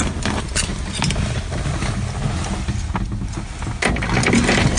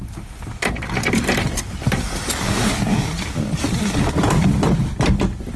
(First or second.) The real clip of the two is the first